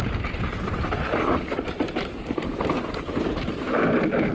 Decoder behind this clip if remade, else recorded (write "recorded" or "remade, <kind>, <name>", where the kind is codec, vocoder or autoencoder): recorded